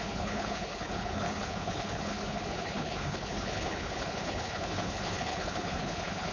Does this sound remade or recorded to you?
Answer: remade